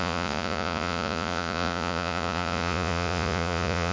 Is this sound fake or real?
fake